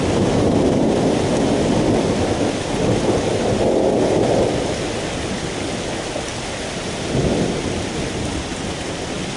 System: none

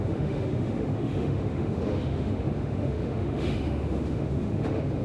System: autoencoder, DAC-VAE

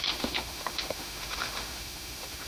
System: autoencoder, DAC-VAE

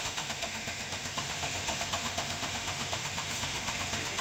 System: autoencoder, DAC-VAE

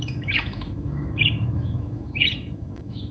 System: autoencoder, DAC-VAE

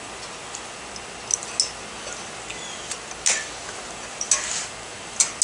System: none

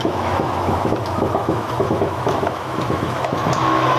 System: autoencoder, DAC-VAE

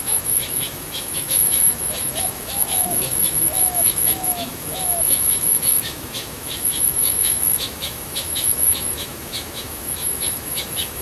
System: autoencoder, DAC-VAE